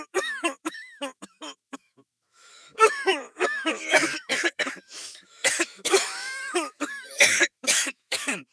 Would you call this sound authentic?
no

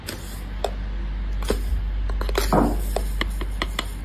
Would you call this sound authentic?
yes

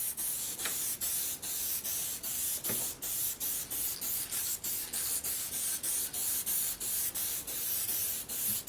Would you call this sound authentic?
yes